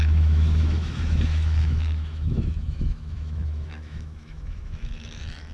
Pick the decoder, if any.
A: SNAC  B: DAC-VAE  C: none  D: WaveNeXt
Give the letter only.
B